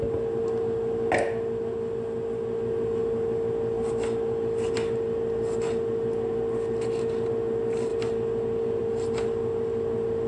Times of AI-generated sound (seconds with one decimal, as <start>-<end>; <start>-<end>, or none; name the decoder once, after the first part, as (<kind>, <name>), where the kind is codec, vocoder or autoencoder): none